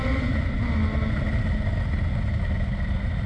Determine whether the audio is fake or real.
real